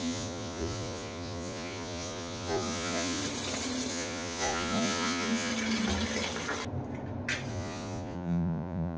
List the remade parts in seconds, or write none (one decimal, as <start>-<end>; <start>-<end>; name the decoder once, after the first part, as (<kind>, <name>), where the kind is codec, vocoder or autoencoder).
0.0-3.2 (vocoder, Vocos); 3.9-5.5; 7.5-9.0